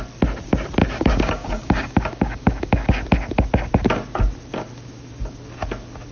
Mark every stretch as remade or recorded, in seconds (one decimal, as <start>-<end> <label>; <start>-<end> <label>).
0.0-0.8 recorded; 0.8-2.9 remade; 2.9-6.1 recorded